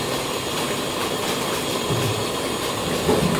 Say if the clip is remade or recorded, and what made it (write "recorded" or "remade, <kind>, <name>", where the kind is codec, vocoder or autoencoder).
recorded